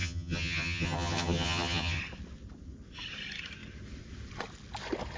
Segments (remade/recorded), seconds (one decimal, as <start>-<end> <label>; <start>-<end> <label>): 0.0-2.0 remade; 2.0-5.2 recorded